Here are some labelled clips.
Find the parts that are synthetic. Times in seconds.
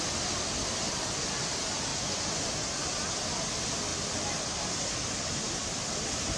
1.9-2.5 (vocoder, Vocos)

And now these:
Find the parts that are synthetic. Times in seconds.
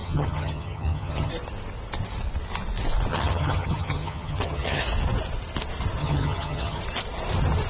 0.0-1.3 (vocoder, HiFi-GAN); 3.1-4.8; 6.0-6.8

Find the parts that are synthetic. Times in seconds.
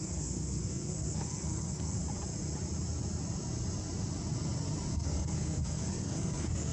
0.0-2.0 (codec, SNAC); 4.9-6.7